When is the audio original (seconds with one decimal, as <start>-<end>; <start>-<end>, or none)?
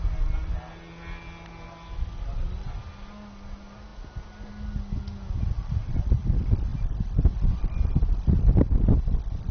0.0-9.5